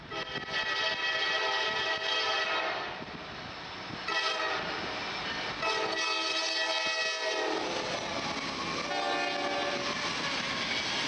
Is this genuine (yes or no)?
yes